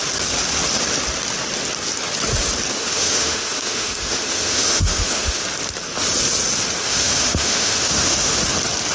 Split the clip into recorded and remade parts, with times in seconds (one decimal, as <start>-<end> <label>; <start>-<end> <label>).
0.0-2.7 recorded; 2.7-5.4 remade; 5.4-6.8 recorded; 6.8-8.4 remade; 8.4-8.9 recorded